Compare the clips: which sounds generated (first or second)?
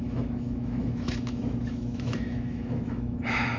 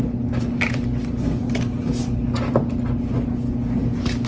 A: first